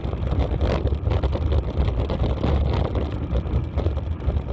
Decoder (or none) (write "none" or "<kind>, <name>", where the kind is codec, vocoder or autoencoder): none